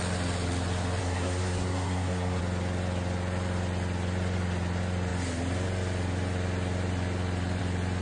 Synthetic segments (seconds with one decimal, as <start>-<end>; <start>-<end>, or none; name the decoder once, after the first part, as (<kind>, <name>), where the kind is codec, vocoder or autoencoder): 1.0-2.4 (codec, SNAC)